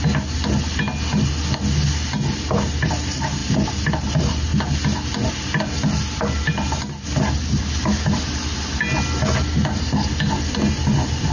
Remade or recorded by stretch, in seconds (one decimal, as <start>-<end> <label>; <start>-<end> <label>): 0.0-11.3 recorded